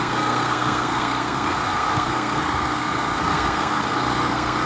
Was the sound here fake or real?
fake